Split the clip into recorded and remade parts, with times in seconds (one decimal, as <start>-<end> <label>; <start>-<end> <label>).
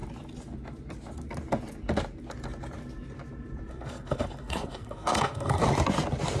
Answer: 0.0-3.7 recorded; 3.7-5.6 remade; 5.6-6.4 recorded